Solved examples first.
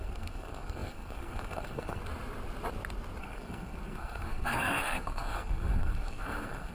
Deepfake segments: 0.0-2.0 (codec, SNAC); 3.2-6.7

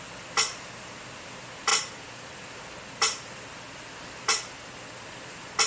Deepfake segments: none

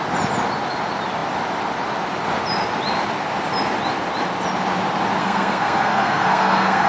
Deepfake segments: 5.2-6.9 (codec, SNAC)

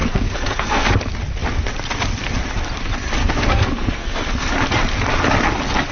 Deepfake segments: 0.0-0.9 (codec, SNAC); 3.2-4.5